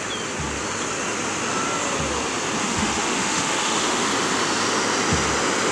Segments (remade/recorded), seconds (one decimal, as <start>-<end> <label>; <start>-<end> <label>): 0.0-2.6 recorded; 2.6-4.1 remade; 4.1-5.7 recorded